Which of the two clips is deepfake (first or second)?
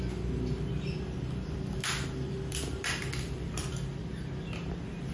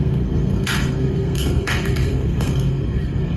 second